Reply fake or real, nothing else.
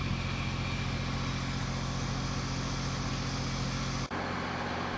real